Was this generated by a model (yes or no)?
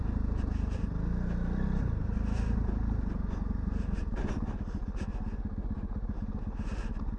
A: no